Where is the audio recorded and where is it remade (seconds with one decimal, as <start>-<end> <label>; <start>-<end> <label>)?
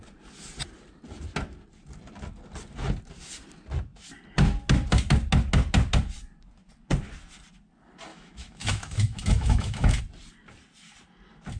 0.0-8.1 recorded; 8.1-10.0 remade; 10.0-11.6 recorded